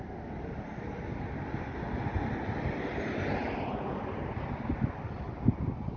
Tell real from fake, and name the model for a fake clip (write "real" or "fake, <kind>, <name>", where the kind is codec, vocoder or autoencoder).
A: real